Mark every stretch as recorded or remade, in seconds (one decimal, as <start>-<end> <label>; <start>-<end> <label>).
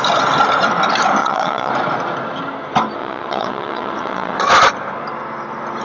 0.0-1.2 recorded; 1.2-1.7 remade; 1.7-3.0 recorded; 3.0-4.5 remade; 4.5-5.8 recorded